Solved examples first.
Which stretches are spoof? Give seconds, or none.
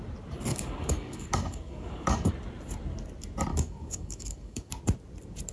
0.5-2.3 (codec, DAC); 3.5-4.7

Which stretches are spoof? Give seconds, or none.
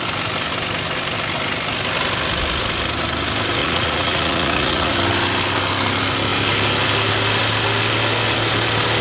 3.6-4.9 (vocoder, Vocos)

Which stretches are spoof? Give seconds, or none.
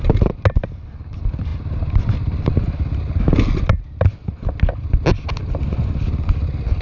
none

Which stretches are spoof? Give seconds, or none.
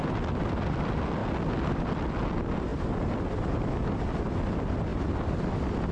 none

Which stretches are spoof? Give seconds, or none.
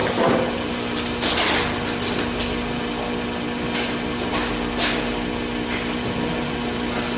none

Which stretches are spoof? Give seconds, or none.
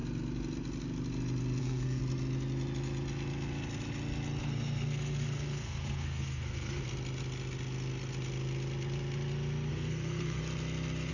1.6-2.0 (codec, SNAC); 4.4-6.9; 9.7-10.4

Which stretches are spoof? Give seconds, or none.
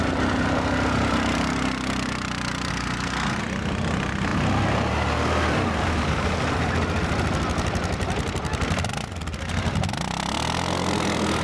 2.7-3.4 (codec, SNAC)